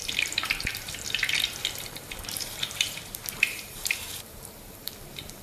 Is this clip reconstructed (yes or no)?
yes